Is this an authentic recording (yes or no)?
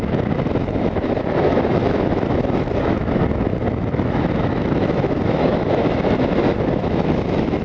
no